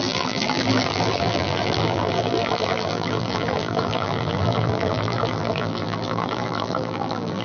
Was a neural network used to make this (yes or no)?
yes